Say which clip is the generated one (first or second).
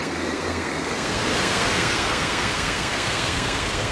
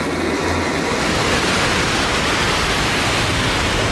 first